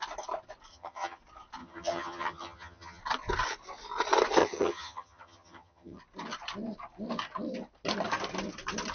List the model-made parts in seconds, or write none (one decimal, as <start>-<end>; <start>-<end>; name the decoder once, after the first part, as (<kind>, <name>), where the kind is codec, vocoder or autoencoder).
0.7-1.2 (vocoder, HiFi-GAN); 1.6-3.0; 4.4-6.0